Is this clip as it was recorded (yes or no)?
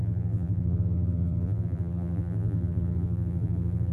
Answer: no